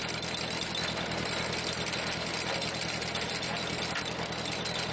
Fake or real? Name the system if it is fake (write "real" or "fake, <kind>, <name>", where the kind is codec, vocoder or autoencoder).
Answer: real